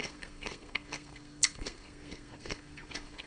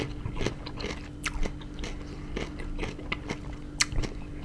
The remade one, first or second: first